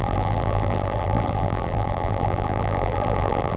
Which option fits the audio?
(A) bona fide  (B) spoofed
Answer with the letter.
B